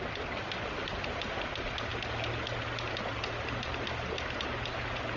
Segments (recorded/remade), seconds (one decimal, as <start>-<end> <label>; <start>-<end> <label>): 0.0-5.2 recorded